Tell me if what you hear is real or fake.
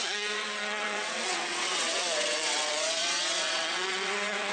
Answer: fake